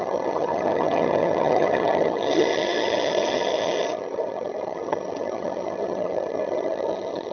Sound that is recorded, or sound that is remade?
remade